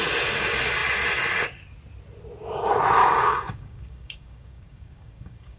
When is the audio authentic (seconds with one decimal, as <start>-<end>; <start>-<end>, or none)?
0.0-3.0